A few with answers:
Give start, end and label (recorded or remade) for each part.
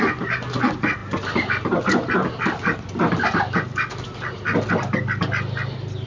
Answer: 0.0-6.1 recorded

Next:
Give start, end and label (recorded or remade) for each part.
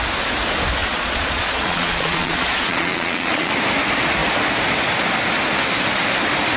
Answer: 0.0-0.8 recorded; 0.8-3.5 remade; 3.5-6.6 recorded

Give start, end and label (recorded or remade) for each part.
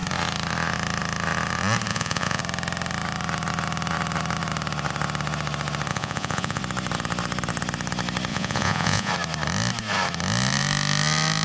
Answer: 0.0-1.9 recorded; 1.9-2.4 remade; 2.4-5.9 recorded; 5.9-6.6 remade; 6.6-8.3 recorded; 8.3-9.1 remade; 9.1-11.4 recorded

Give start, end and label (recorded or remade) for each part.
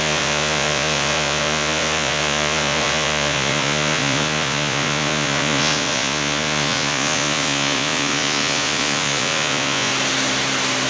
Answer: 0.0-9.9 remade; 9.9-10.9 recorded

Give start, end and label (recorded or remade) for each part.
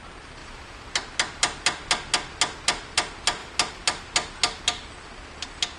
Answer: 0.0-5.8 recorded